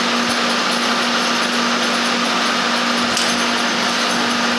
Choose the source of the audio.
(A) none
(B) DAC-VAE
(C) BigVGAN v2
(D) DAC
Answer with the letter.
A